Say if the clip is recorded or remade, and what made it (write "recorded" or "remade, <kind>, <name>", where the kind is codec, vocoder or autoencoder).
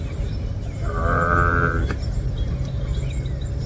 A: recorded